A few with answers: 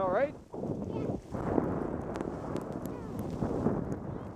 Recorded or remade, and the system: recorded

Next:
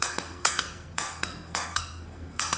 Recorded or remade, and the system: remade, codec, SNAC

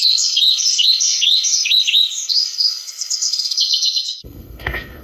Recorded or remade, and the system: remade, codec, SNAC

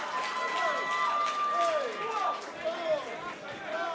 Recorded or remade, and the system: recorded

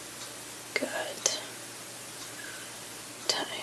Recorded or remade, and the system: recorded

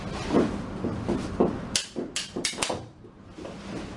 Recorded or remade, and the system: recorded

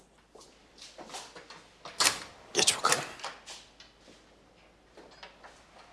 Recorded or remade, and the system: recorded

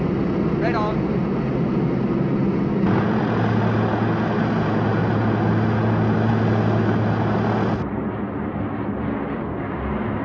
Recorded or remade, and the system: recorded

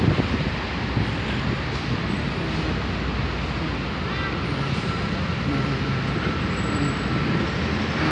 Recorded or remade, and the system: recorded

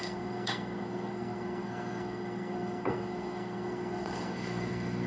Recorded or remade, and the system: remade, codec, SNAC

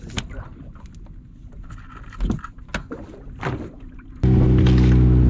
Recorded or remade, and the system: recorded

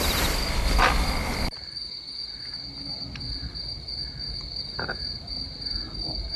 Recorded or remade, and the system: recorded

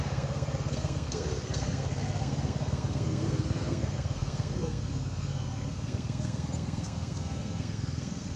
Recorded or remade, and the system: remade, codec, SNAC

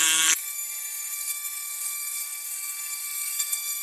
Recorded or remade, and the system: remade, codec, SNAC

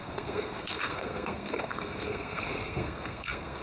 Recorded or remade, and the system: remade, codec, SNAC